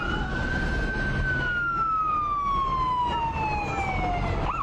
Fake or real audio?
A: real